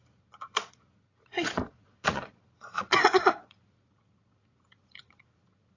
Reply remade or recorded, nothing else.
remade